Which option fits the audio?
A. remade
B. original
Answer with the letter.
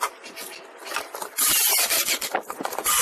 B